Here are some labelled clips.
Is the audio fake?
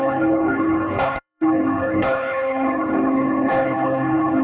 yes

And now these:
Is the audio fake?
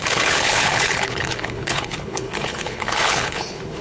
yes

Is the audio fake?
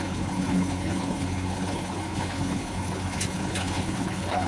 yes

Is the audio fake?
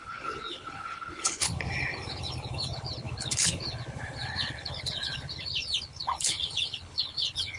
yes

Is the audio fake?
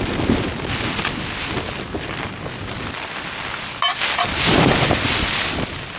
no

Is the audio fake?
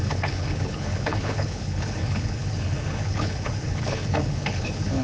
yes